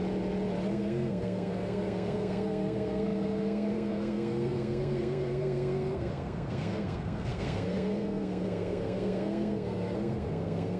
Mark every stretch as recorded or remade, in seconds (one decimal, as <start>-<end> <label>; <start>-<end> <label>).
0.0-0.7 recorded; 0.7-10.8 remade